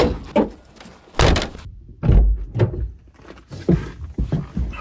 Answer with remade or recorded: recorded